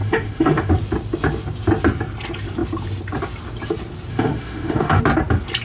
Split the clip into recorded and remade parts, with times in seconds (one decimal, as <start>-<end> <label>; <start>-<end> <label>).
0.0-0.7 remade; 0.7-4.1 recorded; 4.1-5.0 remade; 5.0-5.6 recorded

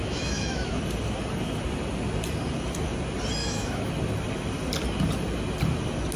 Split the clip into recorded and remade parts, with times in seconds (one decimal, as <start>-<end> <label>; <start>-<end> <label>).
0.0-0.8 remade; 0.8-3.4 recorded; 3.4-3.9 remade; 3.9-6.2 recorded

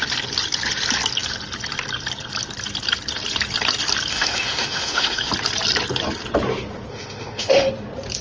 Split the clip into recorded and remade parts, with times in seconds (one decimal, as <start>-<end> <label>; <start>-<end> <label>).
0.0-4.1 recorded; 4.1-5.3 remade; 5.3-6.9 recorded; 6.9-7.7 remade; 7.7-8.2 recorded

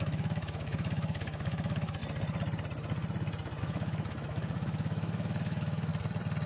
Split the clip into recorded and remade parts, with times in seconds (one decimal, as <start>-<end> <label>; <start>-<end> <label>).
0.0-2.0 remade; 2.0-3.6 recorded; 3.6-5.9 remade; 5.9-6.5 recorded

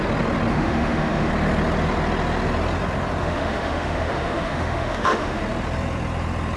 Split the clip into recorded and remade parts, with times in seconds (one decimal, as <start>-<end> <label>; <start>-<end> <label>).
0.0-0.5 recorded; 0.5-1.3 remade; 1.3-3.2 recorded; 3.2-5.4 remade; 5.4-6.6 recorded